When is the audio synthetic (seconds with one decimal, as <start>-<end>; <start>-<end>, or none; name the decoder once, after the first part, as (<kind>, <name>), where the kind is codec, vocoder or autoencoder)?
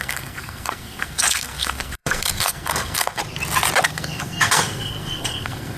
0.0-3.2 (codec, SNAC); 3.8-5.8